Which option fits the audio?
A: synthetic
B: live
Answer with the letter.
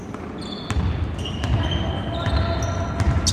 B